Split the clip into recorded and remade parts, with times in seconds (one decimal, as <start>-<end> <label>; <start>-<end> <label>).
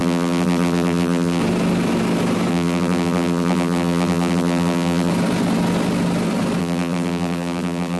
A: 0.0-1.4 remade; 1.4-2.5 recorded; 2.5-5.1 remade; 5.1-6.6 recorded; 6.6-8.0 remade